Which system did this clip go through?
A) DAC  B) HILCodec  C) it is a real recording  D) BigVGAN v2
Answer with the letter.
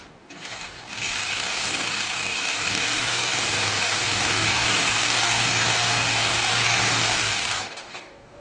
A